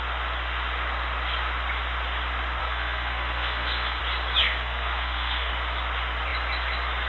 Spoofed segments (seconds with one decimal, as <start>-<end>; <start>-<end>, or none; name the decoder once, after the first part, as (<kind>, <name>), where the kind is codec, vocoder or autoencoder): 2.6-4.0 (codec, SNAC); 4.4-5.5

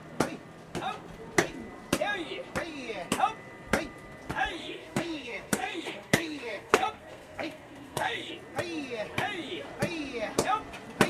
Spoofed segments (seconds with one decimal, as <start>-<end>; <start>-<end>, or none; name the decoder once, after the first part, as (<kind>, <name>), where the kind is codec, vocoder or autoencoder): 4.6-8.3 (codec, SNAC)